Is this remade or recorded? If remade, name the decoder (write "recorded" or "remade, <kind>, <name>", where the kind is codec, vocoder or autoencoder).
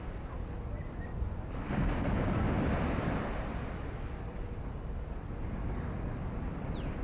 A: recorded